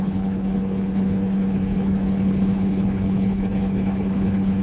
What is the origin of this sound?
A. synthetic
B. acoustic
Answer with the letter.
A